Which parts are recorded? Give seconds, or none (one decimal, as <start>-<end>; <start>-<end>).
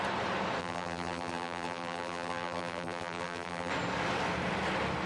0.0-0.6; 3.7-5.1